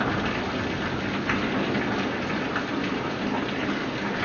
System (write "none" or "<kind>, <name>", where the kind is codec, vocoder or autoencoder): none